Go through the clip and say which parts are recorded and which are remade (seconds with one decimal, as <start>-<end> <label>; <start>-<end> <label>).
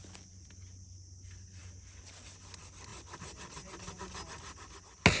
0.0-5.2 recorded